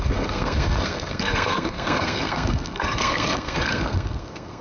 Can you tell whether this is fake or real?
fake